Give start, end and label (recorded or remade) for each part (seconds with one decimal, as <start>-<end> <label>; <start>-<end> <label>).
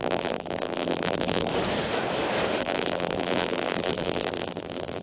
0.0-1.5 remade; 1.5-2.6 recorded; 2.6-5.0 remade